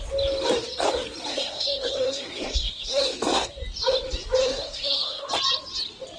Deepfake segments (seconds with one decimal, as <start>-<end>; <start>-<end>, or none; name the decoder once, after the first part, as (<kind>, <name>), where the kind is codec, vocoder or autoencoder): 1.3-3.5 (codec, SNAC); 4.4-5.3